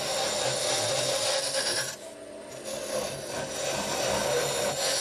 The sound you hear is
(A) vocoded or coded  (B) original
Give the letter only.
B